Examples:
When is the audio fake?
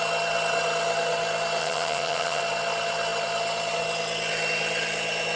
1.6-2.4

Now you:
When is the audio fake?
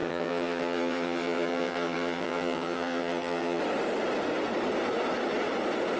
0.0-3.6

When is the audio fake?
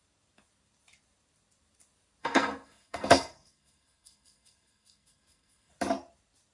2.2-5.7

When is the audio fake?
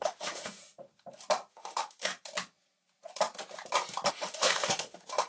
0.0-0.6; 1.5-2.1; 4.1-5.3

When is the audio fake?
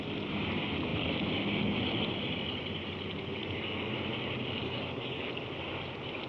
3.4-3.9; 4.6-5.3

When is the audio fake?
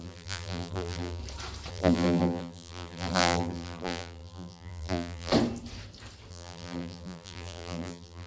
0.0-1.2; 1.7-5.3; 6.3-8.3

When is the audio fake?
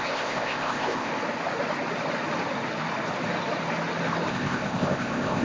0.0-1.1; 4.3-5.4